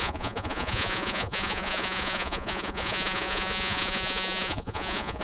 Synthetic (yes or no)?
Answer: yes